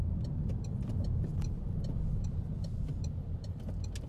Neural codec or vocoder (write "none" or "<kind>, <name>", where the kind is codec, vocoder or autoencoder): none